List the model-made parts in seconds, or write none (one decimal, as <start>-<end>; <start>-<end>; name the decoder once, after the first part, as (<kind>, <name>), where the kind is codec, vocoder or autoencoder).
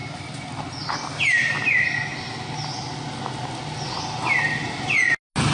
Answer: none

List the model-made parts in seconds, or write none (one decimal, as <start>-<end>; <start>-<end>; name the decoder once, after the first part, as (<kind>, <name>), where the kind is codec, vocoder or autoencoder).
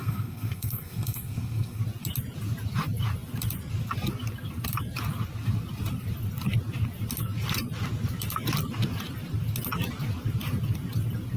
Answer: 0.0-1.8 (codec, SNAC)